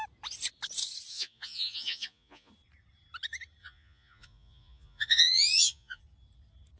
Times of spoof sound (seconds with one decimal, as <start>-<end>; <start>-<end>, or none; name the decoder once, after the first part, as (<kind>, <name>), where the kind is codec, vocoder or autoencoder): 1.1-2.5 (vocoder, Vocos); 3.6-6.0